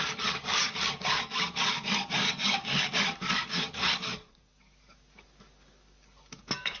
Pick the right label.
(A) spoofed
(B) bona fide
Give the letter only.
A